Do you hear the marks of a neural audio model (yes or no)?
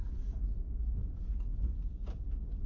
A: no